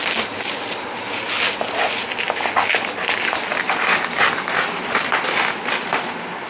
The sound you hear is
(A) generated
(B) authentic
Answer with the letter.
B